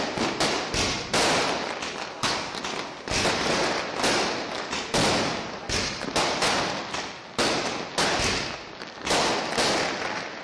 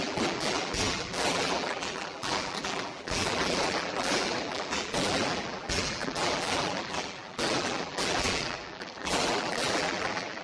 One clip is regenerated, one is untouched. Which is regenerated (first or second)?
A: second